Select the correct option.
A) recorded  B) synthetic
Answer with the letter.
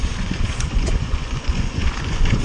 B